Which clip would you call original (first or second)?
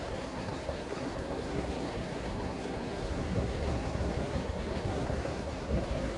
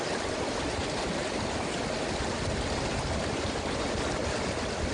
second